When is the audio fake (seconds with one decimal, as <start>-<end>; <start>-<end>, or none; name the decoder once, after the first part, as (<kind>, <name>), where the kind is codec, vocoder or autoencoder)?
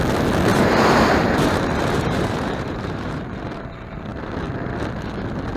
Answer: 0.5-3.2 (vocoder, BigVGAN v2)